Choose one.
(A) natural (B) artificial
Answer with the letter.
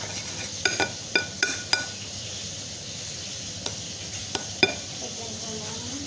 A